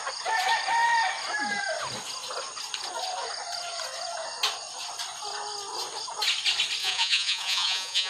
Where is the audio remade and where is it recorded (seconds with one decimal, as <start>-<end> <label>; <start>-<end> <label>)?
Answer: 0.0-6.8 recorded; 6.8-8.1 remade